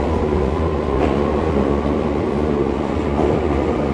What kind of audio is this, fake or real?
fake